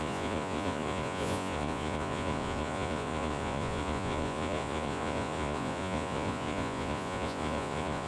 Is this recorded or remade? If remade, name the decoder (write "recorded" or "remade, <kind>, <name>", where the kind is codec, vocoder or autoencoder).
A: remade, vocoder, Vocos